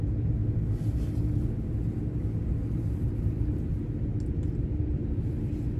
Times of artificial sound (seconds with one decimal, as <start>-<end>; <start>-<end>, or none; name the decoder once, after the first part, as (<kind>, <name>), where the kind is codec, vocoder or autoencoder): none